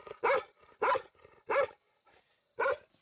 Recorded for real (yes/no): yes